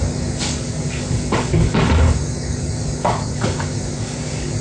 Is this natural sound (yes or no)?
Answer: no